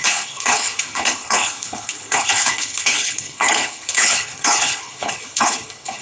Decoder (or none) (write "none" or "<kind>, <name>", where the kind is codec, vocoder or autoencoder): codec, HILCodec